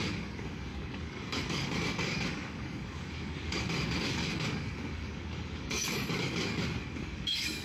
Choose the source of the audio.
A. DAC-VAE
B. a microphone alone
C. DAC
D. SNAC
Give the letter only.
C